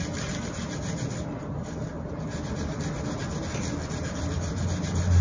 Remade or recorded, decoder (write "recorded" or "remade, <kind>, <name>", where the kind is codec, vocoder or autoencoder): recorded